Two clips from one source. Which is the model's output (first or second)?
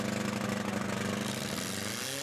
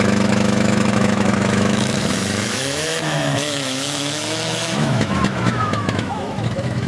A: second